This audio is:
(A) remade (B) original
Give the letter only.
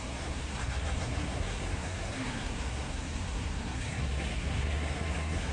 A